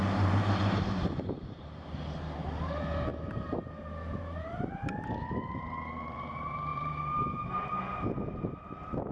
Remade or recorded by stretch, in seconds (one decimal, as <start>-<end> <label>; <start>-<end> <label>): 0.0-9.1 remade